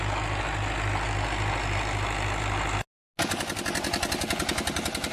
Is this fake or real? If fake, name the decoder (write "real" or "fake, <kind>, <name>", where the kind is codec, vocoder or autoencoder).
real